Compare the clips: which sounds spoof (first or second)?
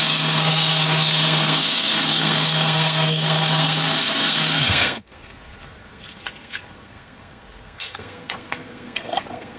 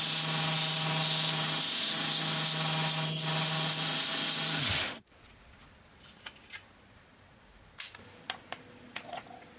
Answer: first